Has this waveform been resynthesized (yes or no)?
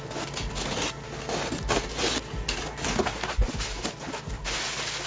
no